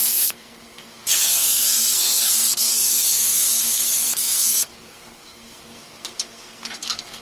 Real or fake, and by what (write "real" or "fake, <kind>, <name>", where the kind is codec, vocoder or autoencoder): fake, codec, SNAC